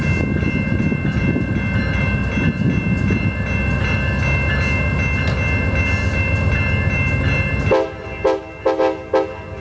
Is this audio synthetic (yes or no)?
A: no